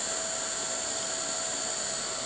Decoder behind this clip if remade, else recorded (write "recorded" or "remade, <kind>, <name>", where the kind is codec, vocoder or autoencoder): recorded